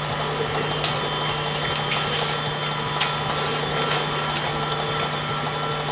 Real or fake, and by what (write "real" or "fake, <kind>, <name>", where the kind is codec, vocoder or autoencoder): real